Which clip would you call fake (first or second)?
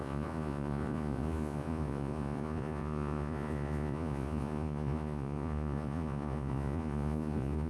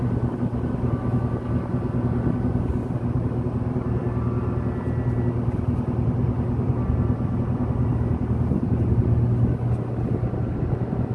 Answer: first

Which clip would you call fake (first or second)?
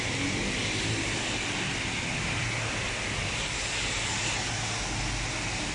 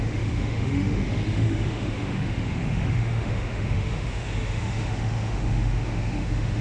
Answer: second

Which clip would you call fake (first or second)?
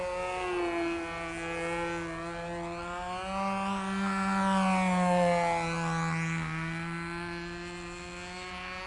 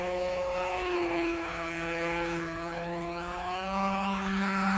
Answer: second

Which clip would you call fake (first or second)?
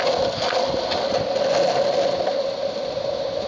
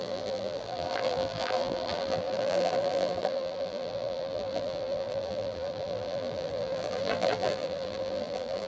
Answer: second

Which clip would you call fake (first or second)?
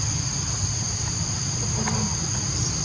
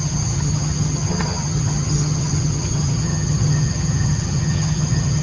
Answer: second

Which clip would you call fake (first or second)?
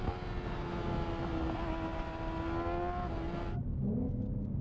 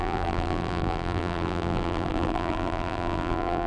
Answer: second